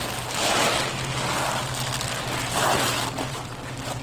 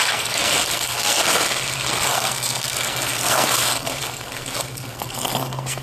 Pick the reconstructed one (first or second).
second